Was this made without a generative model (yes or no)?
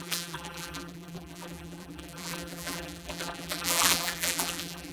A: no